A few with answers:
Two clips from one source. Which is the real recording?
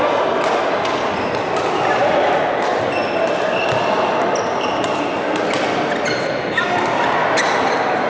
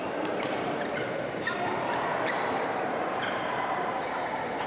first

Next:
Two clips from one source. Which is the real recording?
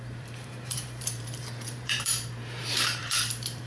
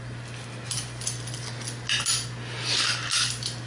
second